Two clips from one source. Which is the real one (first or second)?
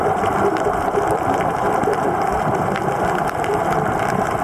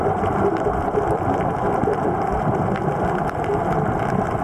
second